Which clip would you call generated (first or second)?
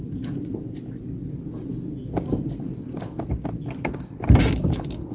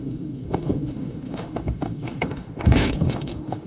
second